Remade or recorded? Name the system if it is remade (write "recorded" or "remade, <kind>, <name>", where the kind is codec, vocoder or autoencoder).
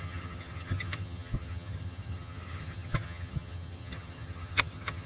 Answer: remade, vocoder, HiFi-GAN